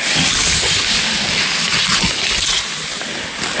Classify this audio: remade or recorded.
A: recorded